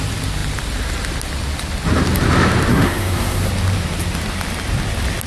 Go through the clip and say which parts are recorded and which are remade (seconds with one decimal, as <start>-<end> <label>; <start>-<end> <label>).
0.0-2.7 recorded; 2.7-3.5 remade; 3.5-5.3 recorded